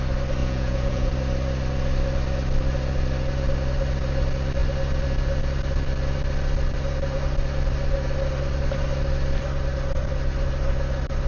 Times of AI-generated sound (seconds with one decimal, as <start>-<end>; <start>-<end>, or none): 0.4-1.1